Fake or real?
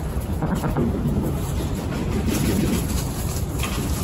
real